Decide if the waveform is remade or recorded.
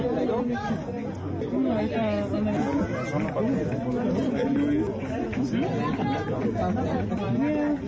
recorded